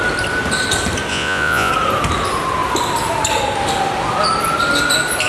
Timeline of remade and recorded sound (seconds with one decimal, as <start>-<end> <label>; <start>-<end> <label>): 0.0-1.1 recorded; 1.1-1.7 remade; 1.7-5.3 recorded